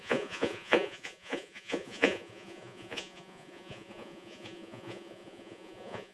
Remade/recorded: remade